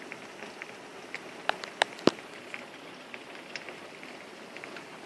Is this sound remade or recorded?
recorded